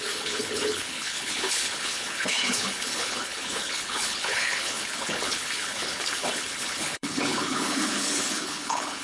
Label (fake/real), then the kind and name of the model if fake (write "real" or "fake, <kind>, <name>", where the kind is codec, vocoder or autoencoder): fake, codec, HILCodec